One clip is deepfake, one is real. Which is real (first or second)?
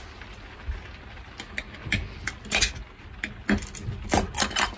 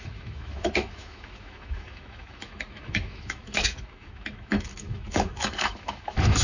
first